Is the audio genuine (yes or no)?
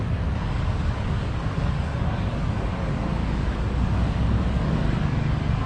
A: no